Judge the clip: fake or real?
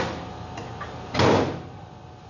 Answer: real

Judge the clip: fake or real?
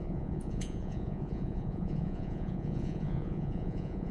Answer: fake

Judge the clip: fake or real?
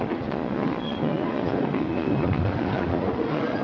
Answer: fake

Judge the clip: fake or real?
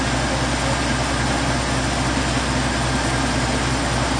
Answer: real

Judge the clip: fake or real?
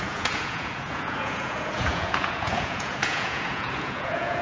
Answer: fake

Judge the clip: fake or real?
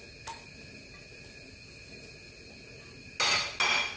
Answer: real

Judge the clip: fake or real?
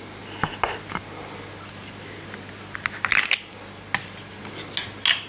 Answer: real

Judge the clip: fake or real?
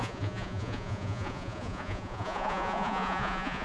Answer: fake